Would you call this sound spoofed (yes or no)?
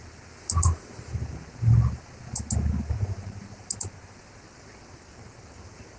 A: no